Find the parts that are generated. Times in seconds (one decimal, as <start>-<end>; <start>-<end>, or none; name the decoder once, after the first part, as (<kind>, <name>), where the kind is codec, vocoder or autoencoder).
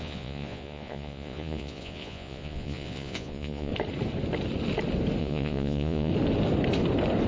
0.0-3.7 (vocoder, Vocos); 5.2-6.1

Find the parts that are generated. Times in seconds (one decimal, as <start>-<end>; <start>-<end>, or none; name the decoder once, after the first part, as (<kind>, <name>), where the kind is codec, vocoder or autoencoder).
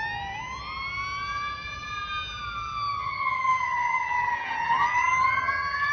3.0-5.9 (vocoder, HiFi-GAN)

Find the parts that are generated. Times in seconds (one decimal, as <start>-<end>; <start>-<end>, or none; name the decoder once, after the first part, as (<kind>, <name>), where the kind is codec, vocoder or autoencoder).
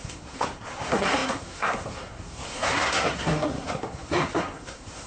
0.0-5.1 (codec, SNAC)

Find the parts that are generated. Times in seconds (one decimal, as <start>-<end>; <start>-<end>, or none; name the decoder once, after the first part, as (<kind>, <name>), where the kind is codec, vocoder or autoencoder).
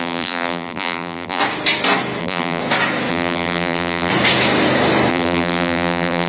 0.0-1.4 (vocoder, BigVGAN v2); 2.2-2.6; 3.1-4.1; 5.1-6.3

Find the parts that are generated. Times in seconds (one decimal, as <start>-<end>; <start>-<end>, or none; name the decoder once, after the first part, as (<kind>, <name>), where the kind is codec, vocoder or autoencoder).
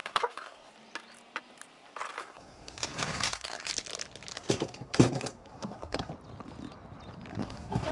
0.0-0.7 (codec, SNAC); 2.2-3.7; 4.3-6.1; 7.3-7.9